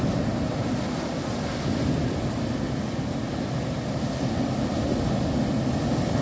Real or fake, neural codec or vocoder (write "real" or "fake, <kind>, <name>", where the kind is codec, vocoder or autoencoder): real